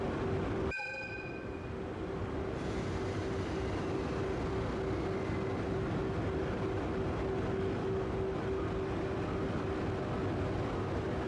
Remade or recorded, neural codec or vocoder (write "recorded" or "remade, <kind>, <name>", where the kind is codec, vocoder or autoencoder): recorded